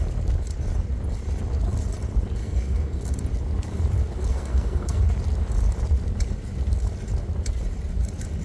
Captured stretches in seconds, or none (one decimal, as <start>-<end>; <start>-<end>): 0.0-2.4; 3.0-4.3; 5.0-8.4